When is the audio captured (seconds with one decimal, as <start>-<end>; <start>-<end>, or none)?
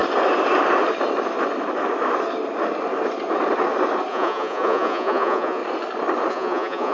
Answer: 0.0-4.1; 5.6-6.3